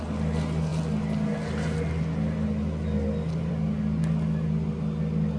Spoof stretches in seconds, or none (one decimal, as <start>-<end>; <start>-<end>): none